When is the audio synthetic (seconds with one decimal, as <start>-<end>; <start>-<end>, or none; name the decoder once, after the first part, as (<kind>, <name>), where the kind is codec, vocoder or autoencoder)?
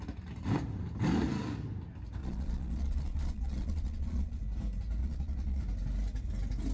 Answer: 2.2-4.4 (vocoder, Vocos); 5.0-5.6